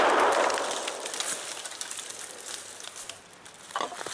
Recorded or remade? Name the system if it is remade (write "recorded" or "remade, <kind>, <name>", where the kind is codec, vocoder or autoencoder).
recorded